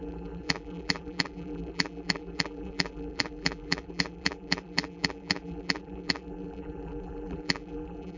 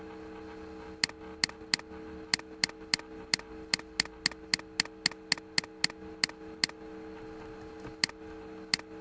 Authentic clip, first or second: second